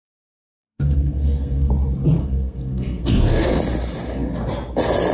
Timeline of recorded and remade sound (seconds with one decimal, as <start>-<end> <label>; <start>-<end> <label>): 0.0-1.7 remade; 1.7-2.2 recorded; 2.2-3.6 remade; 3.6-5.1 recorded